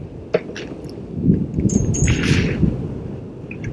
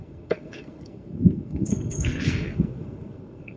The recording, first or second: first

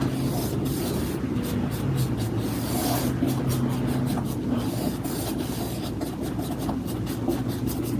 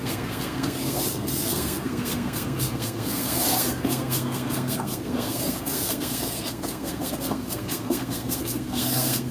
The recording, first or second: first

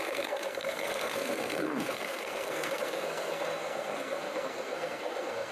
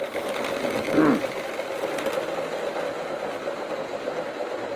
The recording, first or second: second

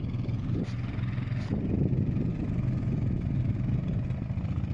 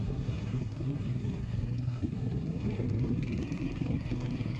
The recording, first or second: first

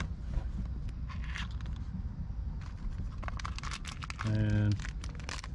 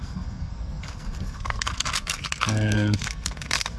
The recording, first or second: first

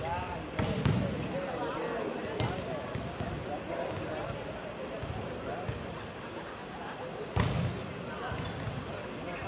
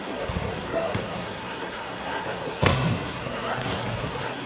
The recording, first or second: first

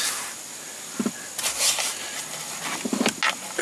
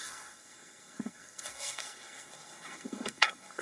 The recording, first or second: first